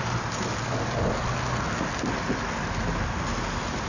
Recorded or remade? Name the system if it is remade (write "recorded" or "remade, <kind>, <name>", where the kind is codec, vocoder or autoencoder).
recorded